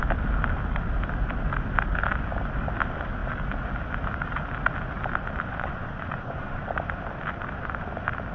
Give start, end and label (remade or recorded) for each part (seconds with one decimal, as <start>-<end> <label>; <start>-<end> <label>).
0.0-5.5 recorded; 5.5-6.6 remade; 6.6-8.3 recorded